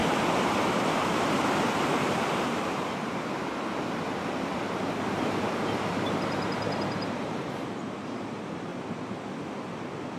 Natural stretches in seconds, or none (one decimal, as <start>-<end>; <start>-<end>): 3.5-6.8; 8.7-10.2